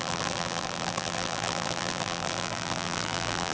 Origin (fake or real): fake